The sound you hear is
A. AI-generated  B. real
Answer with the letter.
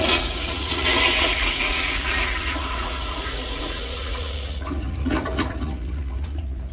A